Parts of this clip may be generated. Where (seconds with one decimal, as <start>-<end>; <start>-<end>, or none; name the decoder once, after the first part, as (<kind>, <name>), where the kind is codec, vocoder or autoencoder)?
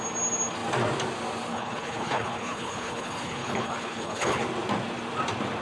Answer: 1.5-4.4 (codec, HILCodec)